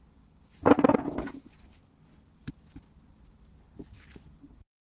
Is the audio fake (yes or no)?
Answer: no